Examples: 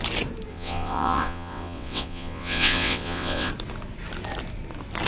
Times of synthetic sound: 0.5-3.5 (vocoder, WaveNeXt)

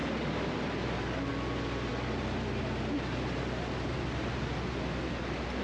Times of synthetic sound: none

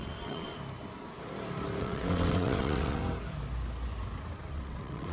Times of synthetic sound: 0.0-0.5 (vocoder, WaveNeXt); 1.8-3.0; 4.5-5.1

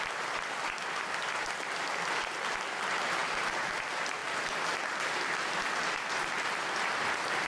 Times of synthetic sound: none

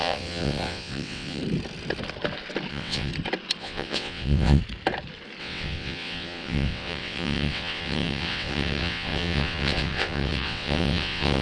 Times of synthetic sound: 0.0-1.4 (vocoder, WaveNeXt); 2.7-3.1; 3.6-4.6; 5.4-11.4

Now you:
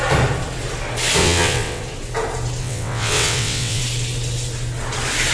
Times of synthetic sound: 1.2-1.8 (vocoder, WaveNeXt); 2.6-3.8

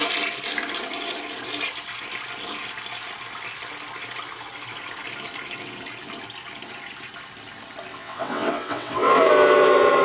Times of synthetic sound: 7.9-9.3 (vocoder, WaveNeXt)